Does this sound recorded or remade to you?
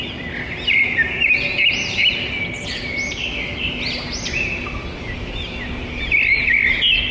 recorded